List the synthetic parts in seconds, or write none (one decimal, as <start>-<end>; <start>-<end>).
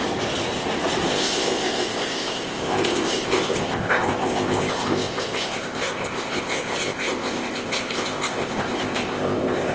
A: 1.1-9.7